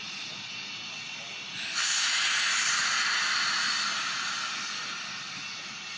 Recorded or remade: recorded